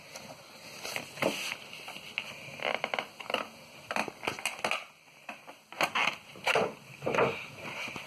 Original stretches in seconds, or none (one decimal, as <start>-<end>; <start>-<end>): 0.0-8.1